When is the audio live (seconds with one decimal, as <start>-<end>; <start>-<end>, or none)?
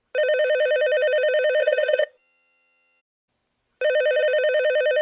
0.0-1.6; 3.0-5.0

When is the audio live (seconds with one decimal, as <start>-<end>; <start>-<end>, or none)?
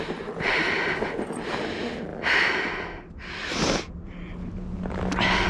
0.0-5.5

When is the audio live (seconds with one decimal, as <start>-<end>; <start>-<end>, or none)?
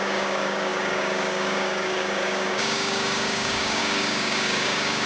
none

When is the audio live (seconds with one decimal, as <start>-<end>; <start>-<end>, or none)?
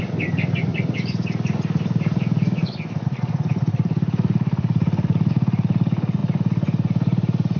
0.0-0.7; 5.3-6.2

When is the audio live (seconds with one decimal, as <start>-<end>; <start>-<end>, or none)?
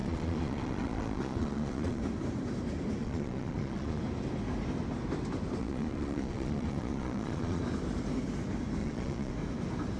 2.0-3.0; 4.0-5.6; 7.6-8.8; 9.3-10.0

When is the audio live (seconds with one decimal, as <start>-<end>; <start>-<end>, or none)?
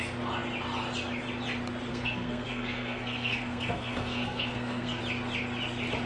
0.0-1.9; 5.0-6.1